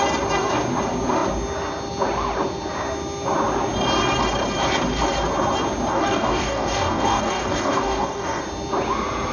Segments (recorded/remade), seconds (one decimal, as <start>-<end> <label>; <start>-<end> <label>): 0.0-5.9 recorded; 5.9-8.4 remade; 8.4-9.3 recorded